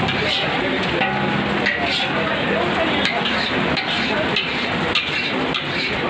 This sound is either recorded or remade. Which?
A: recorded